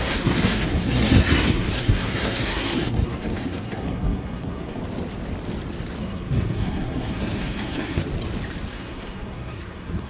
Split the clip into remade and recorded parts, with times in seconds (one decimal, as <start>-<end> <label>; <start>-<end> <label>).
0.0-4.8 remade; 4.8-6.0 recorded; 6.0-8.0 remade; 8.0-8.7 recorded; 8.7-10.1 remade